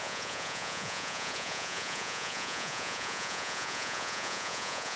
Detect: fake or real fake